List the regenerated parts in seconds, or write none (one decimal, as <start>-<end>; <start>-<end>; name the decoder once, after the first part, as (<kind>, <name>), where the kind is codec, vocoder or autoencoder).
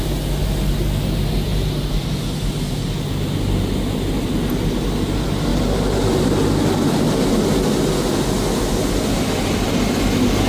none